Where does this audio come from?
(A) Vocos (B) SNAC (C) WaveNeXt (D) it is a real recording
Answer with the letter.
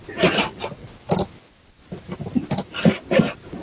D